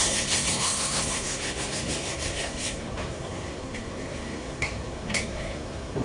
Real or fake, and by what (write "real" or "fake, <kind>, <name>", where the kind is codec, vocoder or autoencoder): fake, codec, SNAC